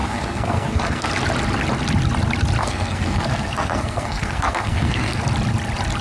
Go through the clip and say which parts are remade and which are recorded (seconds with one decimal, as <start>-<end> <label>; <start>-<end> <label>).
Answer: 0.0-1.1 remade; 1.1-2.6 recorded; 2.6-5.2 remade; 5.2-6.0 recorded